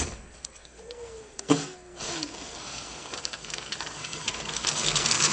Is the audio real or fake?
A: fake